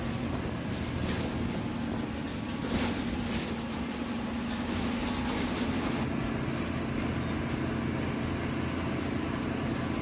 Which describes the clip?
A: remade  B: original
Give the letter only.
B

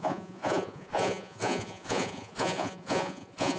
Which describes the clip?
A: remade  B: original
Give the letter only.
A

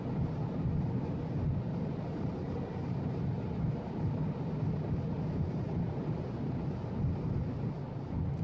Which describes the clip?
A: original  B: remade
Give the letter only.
A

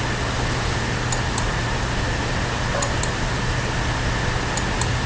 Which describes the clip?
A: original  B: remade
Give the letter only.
A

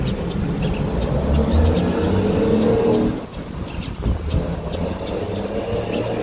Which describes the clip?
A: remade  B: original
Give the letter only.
B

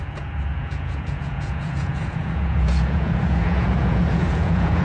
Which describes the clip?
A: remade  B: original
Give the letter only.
A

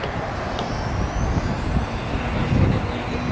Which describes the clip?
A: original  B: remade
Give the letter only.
A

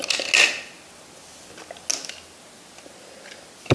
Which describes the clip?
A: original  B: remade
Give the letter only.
A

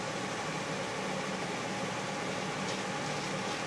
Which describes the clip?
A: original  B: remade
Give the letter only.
A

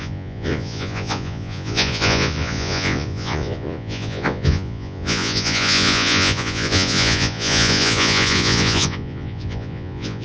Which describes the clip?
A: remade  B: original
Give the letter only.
A